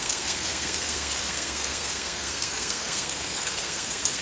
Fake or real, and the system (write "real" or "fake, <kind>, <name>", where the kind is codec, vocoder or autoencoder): fake, codec, SNAC